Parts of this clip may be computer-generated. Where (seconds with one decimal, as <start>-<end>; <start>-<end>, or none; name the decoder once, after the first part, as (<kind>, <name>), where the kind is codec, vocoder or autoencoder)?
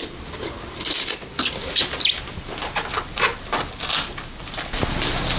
none